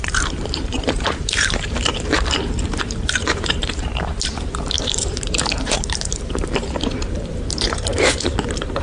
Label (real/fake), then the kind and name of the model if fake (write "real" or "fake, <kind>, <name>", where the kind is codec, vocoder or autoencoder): fake, vocoder, BigVGAN v2